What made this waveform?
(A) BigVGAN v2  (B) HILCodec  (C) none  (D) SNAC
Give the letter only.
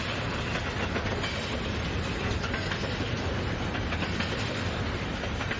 C